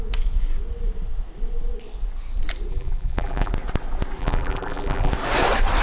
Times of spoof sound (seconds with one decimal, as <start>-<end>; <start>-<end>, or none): 2.7-3.5; 4.2-5.1